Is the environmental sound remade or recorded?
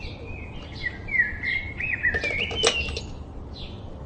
recorded